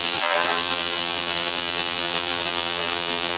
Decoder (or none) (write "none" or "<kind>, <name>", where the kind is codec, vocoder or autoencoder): vocoder, BigVGAN v2